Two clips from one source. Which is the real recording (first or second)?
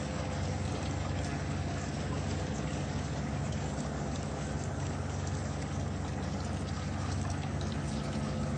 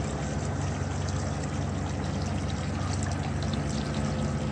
second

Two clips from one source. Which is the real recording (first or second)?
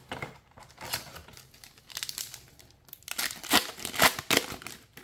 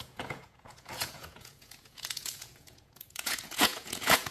first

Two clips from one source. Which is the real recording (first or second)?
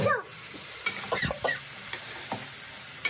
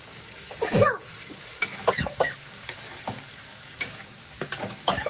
first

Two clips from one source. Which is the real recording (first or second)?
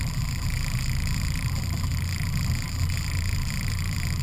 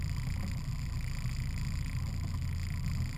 second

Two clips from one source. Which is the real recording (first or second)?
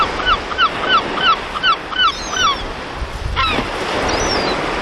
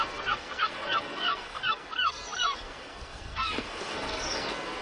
first